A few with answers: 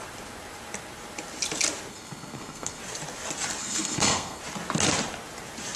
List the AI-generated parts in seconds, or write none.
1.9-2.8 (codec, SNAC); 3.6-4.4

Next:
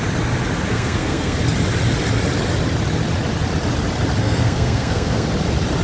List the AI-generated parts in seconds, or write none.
0.7-1.4 (codec, SNAC); 4.2-5.3

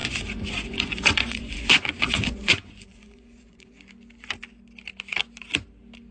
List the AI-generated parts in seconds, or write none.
0.0-3.7 (vocoder, Vocos)

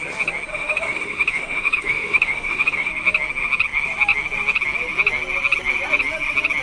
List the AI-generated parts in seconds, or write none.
0.5-2.9 (autoencoder, DAC-VAE)

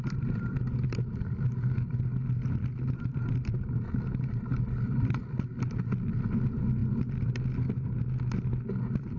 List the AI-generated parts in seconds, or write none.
none